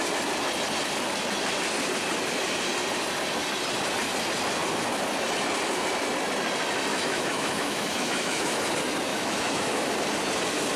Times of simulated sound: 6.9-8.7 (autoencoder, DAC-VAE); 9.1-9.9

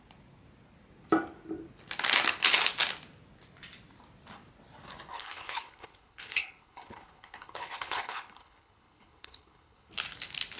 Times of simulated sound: 5.1-9.9 (codec, HILCodec)

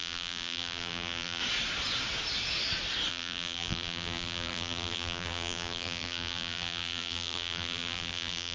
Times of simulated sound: 0.0-1.4 (vocoder, BigVGAN v2); 3.1-8.5

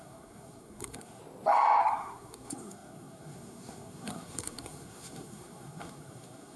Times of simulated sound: 0.0-1.2 (codec, SNAC); 1.8-6.6

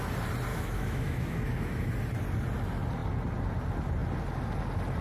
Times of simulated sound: 0.5-1.9 (autoencoder, DAC-VAE)

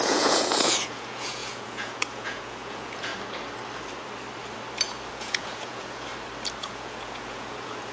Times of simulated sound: 0.0-3.1 (vocoder, Vocos); 5.1-6.1; 6.6-7.9

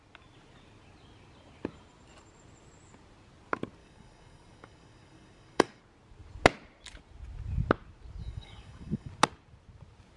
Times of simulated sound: 3.8-5.8 (codec, DAC); 8.2-9.1